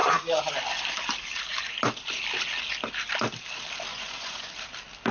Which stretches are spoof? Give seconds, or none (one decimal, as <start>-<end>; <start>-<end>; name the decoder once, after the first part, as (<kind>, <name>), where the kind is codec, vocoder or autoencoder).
3.9-4.5 (vocoder, Vocos)